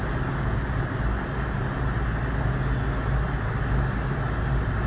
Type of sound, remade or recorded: recorded